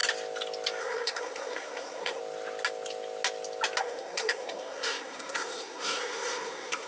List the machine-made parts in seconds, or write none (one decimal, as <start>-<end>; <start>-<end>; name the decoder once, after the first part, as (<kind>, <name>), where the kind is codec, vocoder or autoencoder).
0.8-2.2 (codec, SNAC); 3.8-6.9